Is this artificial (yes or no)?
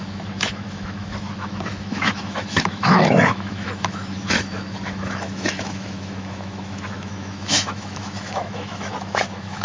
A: yes